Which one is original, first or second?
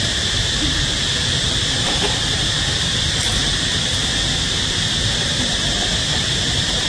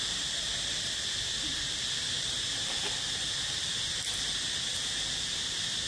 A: second